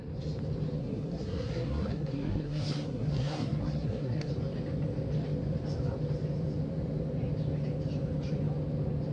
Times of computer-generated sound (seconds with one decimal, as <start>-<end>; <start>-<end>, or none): 0.8-4.3